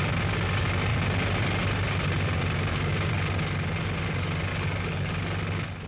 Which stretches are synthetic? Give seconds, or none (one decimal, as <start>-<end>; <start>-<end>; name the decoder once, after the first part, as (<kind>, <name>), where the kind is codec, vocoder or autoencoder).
4.5-5.1 (codec, DAC)